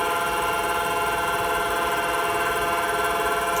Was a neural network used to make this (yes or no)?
no